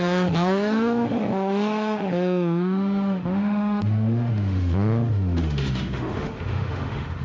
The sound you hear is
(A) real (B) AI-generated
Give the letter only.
B